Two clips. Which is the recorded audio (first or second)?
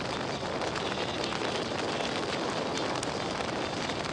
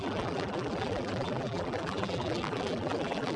first